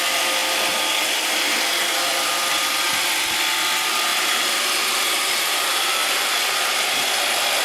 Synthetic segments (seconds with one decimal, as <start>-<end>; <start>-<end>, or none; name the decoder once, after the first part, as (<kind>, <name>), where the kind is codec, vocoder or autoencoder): 4.1-6.4 (vocoder, BigVGAN v2)